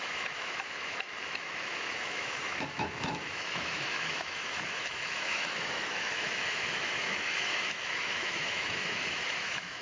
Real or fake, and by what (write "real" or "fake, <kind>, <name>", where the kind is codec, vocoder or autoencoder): fake, autoencoder, DAC-VAE